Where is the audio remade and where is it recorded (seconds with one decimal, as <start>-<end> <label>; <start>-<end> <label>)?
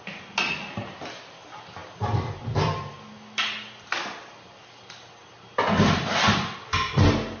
0.0-7.4 recorded